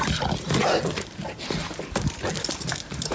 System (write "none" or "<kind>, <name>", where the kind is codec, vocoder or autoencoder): none